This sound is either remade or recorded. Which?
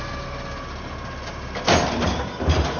recorded